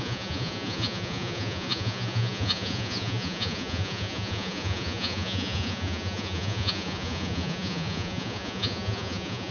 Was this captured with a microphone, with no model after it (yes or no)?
no